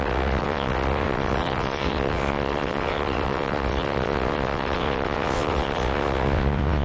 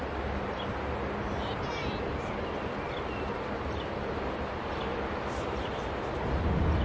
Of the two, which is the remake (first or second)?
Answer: first